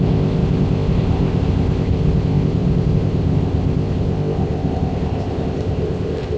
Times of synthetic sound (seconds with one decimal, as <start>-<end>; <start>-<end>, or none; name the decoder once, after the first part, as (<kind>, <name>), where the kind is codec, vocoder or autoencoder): 0.0-6.4 (codec, ZipCodec)